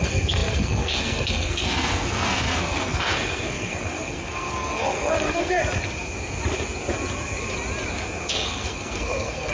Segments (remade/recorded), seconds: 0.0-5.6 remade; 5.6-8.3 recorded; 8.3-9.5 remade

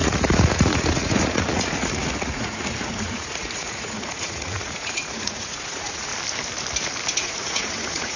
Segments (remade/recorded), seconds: 0.0-6.1 remade; 6.1-7.1 recorded; 7.1-8.2 remade

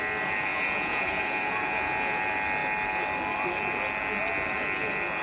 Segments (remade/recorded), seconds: 0.0-0.5 recorded; 0.5-2.2 remade; 2.2-5.2 recorded

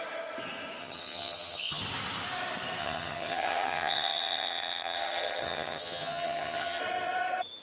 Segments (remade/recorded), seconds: 0.0-0.8 recorded; 0.8-1.8 remade; 1.8-2.8 recorded; 2.8-6.8 remade; 6.8-7.6 recorded

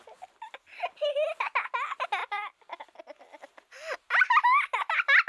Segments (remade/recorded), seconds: 0.0-2.2 recorded; 2.2-3.4 remade; 3.4-5.3 recorded

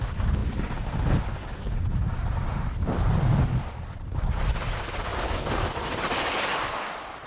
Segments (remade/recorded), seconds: 0.0-7.3 recorded

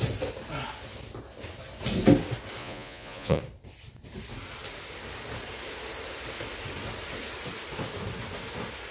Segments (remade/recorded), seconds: 0.0-2.6 recorded; 2.6-3.4 remade; 3.4-8.9 recorded